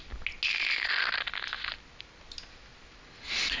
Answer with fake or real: real